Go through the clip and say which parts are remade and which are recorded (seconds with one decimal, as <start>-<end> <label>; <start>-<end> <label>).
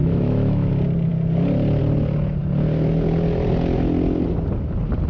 0.0-0.7 remade; 0.7-5.1 recorded